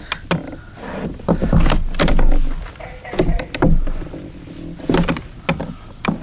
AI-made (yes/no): no